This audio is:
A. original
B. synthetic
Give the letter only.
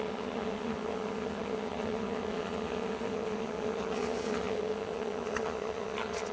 B